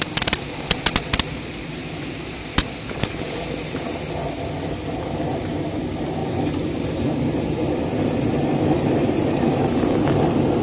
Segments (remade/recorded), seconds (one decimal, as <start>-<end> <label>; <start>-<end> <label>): 0.0-10.6 recorded